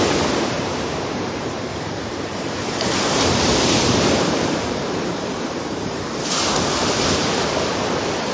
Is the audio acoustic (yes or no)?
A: no